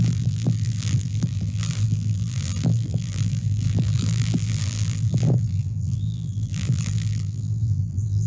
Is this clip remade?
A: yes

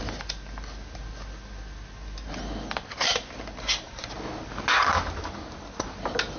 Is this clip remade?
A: no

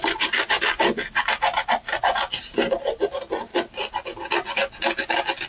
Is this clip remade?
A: no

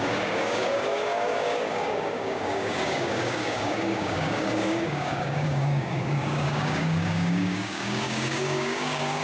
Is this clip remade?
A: yes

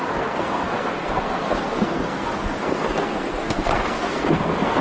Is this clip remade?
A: yes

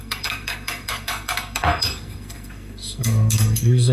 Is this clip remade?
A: yes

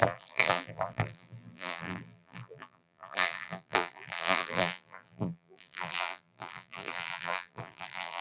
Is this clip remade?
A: yes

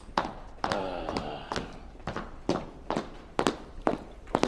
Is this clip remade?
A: yes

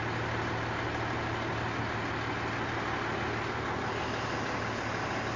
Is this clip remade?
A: no